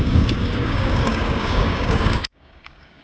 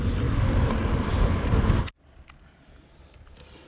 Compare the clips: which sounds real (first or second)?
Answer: second